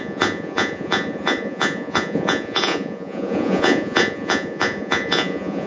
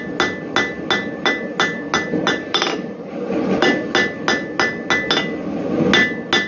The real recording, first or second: second